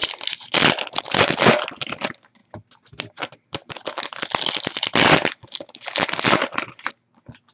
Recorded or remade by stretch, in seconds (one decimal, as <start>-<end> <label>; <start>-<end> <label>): 0.0-7.5 recorded